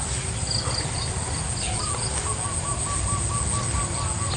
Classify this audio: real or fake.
real